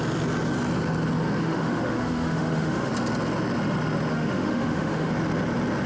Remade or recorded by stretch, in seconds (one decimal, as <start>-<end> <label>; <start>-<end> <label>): 0.0-1.4 recorded; 1.4-2.9 remade; 2.9-4.1 recorded; 4.1-5.1 remade; 5.1-5.9 recorded